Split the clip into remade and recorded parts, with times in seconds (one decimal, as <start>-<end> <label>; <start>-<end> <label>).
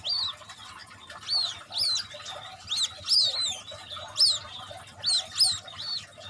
0.0-6.3 recorded